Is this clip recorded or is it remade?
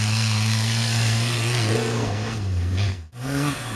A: remade